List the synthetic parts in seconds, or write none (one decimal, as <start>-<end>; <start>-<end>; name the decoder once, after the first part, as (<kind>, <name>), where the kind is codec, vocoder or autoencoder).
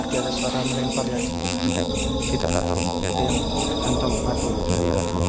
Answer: 1.3-1.9 (vocoder, BigVGAN v2); 2.4-3.2; 4.6-5.3